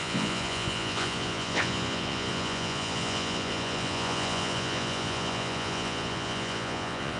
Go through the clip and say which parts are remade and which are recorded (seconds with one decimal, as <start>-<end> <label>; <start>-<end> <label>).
0.0-7.2 remade